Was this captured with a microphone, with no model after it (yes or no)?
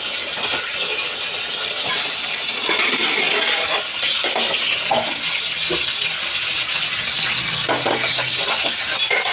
yes